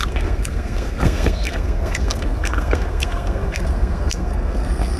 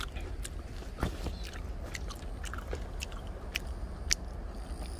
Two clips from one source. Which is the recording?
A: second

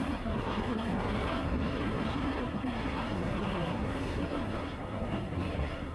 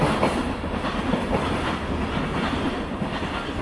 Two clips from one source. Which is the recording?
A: second